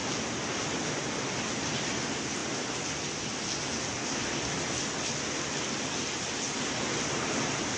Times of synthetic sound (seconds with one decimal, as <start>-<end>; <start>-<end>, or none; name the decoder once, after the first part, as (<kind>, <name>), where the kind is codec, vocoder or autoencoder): none